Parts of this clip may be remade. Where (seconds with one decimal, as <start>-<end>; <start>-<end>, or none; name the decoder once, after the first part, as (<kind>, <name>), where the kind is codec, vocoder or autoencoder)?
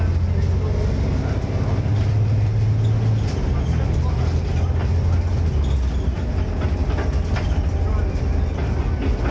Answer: none